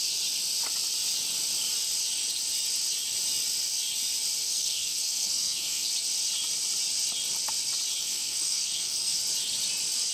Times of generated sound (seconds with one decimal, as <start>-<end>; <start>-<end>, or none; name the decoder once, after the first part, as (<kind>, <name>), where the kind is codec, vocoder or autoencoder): 4.4-5.9 (codec, SNAC); 8.0-9.2